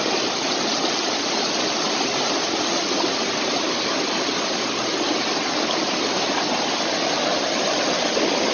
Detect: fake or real real